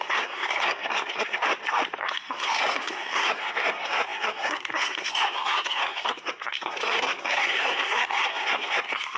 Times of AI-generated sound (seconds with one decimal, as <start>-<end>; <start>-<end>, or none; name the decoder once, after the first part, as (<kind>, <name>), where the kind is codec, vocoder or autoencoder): 0.0-1.4 (codec, SNAC); 2.0-9.2